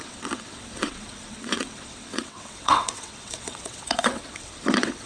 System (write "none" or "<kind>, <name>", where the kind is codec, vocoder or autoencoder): vocoder, WaveNeXt